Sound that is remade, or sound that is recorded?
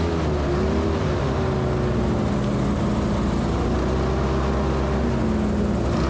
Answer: recorded